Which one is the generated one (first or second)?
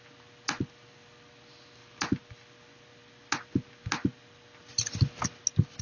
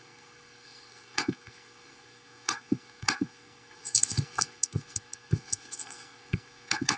second